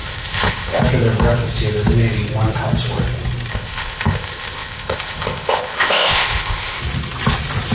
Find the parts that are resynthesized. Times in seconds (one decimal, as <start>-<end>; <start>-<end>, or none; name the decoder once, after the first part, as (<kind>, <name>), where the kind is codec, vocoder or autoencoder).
0.0-0.8 (codec, ZipCodec); 3.5-6.8